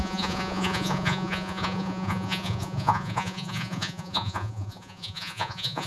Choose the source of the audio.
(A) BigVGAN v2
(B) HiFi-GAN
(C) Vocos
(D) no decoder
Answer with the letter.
C